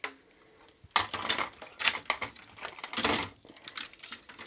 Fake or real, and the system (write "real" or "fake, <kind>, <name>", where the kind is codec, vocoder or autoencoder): real